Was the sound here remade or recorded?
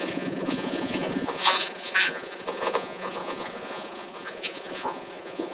remade